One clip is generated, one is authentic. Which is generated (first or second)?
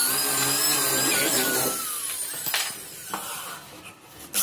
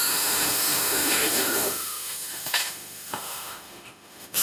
second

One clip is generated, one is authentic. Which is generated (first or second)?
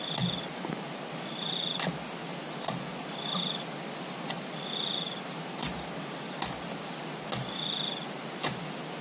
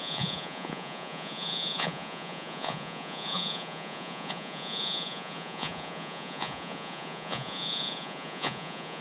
second